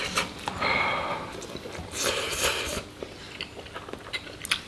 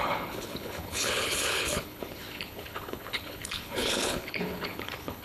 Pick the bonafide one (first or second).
first